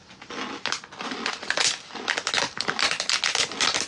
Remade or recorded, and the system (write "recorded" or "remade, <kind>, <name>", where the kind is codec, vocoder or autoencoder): recorded